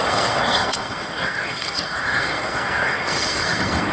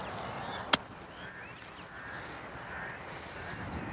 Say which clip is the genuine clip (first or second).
second